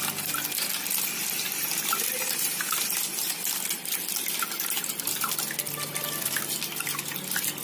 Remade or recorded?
recorded